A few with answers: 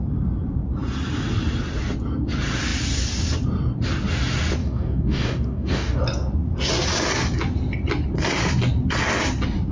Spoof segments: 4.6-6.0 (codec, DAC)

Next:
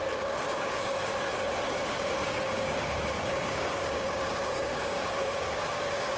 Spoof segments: 0.0-1.1 (codec, DAC); 1.7-6.2

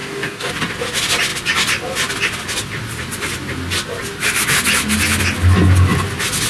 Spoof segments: 0.0-0.5 (codec, DAC)